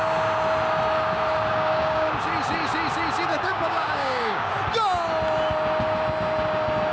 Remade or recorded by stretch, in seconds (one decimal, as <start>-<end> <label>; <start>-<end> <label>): 0.0-1.5 recorded; 1.5-2.1 remade; 2.1-3.3 recorded; 3.3-4.5 remade; 4.5-6.9 recorded